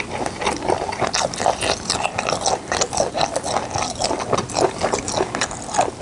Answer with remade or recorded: recorded